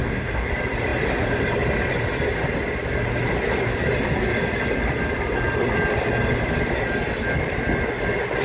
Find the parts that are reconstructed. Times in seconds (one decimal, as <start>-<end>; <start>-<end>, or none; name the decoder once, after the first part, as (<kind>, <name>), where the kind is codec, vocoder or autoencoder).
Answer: 0.0-0.5 (codec, DAC)